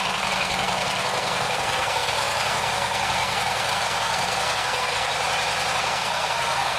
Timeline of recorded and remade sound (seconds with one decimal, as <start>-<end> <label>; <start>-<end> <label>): 0.0-5.1 remade; 5.1-5.8 recorded; 5.8-6.8 remade